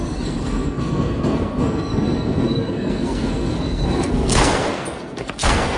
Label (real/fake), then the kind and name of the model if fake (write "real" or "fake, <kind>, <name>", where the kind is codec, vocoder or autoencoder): fake, codec, SNAC